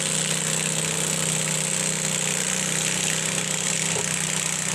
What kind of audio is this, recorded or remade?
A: recorded